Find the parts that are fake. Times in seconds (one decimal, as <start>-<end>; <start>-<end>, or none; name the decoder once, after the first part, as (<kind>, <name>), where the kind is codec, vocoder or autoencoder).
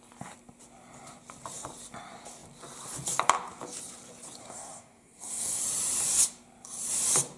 4.4-5.6 (codec, SNAC)